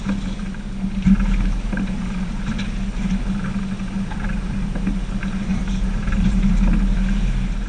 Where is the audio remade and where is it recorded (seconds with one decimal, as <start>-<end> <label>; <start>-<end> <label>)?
0.0-5.5 recorded; 5.5-6.5 remade; 6.5-7.7 recorded